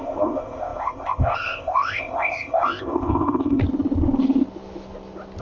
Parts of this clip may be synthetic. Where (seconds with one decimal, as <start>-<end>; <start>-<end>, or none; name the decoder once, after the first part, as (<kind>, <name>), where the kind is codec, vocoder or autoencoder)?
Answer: 0.0-3.6 (codec, ZipCodec)